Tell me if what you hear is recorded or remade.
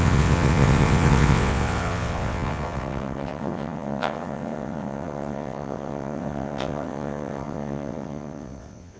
remade